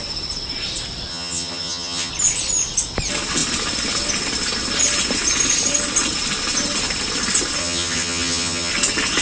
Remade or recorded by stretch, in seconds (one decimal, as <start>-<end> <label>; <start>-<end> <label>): 0.0-1.1 recorded; 1.1-2.1 remade; 2.1-7.6 recorded; 7.6-8.7 remade; 8.7-9.2 recorded